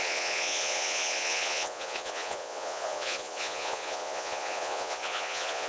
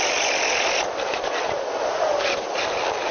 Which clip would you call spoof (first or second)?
first